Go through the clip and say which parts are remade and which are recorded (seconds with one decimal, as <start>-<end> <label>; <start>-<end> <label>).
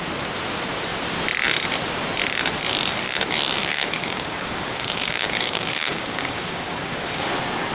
0.0-3.6 recorded; 3.6-7.3 remade; 7.3-7.7 recorded